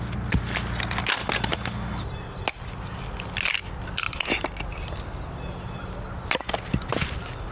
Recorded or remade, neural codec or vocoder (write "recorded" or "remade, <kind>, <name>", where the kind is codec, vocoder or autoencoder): recorded